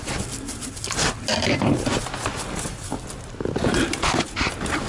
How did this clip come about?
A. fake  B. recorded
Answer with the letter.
B